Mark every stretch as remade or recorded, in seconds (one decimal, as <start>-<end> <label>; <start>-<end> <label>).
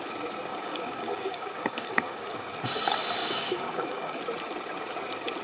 0.0-0.5 recorded; 0.5-2.2 remade; 2.2-3.2 recorded; 3.2-4.2 remade; 4.2-5.4 recorded